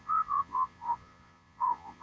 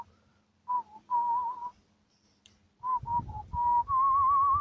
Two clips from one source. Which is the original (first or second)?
second